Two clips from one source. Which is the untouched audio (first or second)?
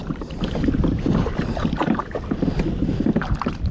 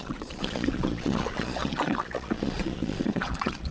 first